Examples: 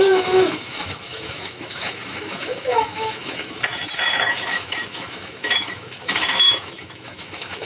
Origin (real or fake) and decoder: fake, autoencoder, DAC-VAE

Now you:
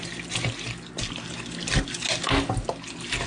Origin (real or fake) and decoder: real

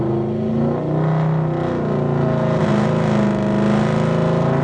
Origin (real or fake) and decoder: real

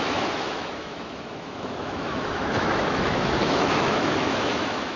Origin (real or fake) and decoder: fake, autoencoder, DAC-VAE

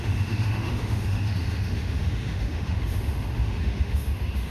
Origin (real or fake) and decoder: fake, autoencoder, DAC-VAE